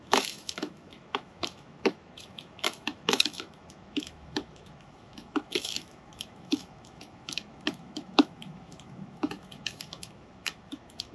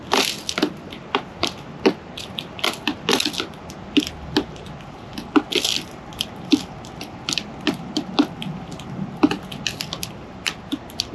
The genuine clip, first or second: second